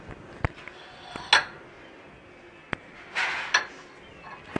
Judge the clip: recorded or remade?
recorded